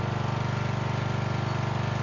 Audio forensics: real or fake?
real